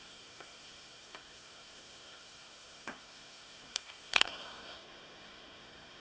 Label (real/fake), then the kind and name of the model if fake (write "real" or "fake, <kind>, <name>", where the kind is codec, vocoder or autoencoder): fake, codec, SNAC